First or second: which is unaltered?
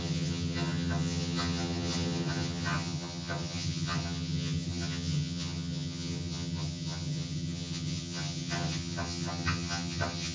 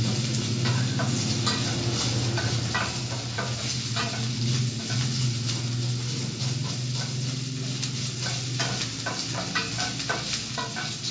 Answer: second